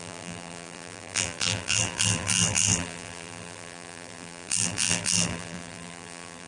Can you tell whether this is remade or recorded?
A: remade